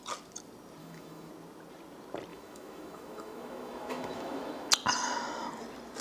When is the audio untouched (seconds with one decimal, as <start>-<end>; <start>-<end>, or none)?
0.0-0.8; 1.3-2.3; 4.7-6.0